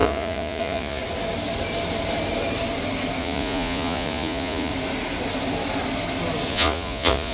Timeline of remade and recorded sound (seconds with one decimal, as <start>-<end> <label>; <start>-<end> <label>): 0.0-1.0 remade; 1.0-3.2 recorded; 3.2-4.7 remade; 4.7-6.5 recorded; 6.5-7.3 remade